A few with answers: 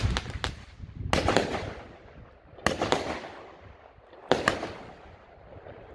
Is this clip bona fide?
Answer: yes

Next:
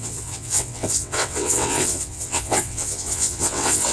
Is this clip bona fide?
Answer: no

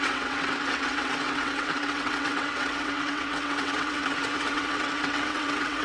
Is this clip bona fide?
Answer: no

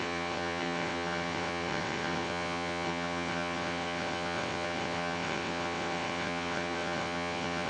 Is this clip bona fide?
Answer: no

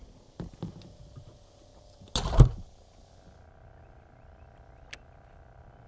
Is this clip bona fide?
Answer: yes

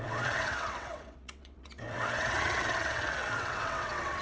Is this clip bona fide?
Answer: no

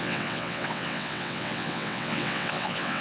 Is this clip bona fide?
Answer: no